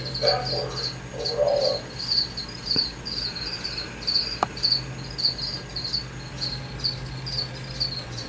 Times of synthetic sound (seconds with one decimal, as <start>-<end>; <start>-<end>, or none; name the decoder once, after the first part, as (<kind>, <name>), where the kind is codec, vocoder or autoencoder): none